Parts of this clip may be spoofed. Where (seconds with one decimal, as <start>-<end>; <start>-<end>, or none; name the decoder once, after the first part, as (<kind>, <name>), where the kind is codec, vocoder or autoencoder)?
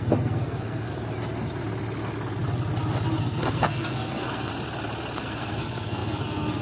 0.0-0.9 (codec, SNAC); 3.2-4.5; 5.2-6.6